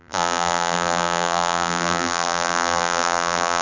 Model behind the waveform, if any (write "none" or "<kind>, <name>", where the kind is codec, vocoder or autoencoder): vocoder, BigVGAN v2